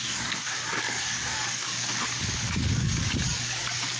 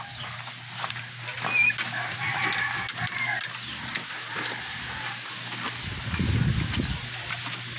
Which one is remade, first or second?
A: first